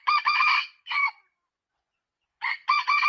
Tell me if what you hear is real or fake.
fake